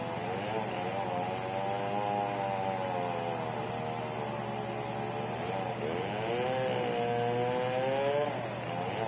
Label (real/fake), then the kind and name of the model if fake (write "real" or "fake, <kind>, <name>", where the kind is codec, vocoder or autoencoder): real